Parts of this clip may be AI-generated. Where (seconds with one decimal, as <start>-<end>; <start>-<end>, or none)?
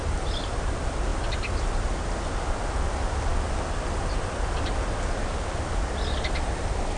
none